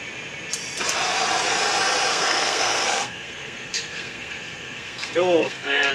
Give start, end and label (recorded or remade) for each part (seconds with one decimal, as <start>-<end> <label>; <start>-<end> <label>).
0.0-2.1 recorded; 2.1-5.9 remade